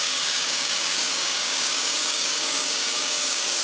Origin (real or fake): fake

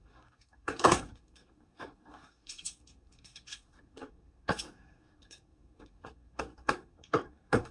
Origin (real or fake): fake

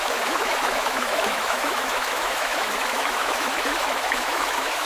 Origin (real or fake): fake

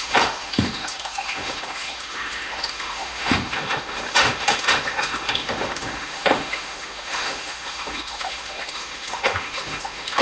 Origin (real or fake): fake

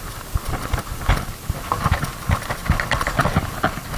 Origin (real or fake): real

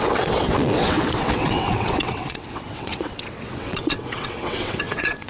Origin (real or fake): fake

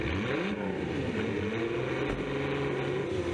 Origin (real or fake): real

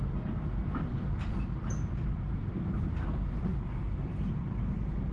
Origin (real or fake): real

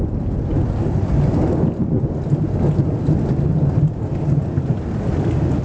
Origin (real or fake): real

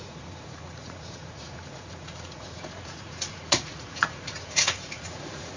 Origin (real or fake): fake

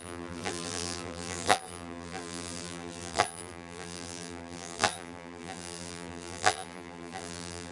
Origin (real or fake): fake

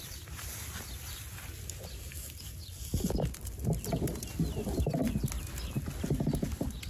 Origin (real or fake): real